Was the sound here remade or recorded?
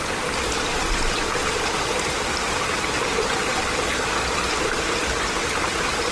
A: recorded